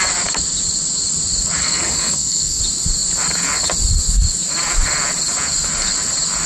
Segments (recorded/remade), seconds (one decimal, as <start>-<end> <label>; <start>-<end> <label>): 0.0-1.6 recorded; 1.6-2.6 remade; 2.6-6.5 recorded